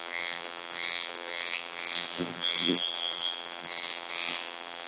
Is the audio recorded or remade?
remade